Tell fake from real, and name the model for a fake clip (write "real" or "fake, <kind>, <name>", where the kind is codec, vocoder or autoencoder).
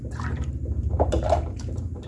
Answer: fake, vocoder, BigVGAN v2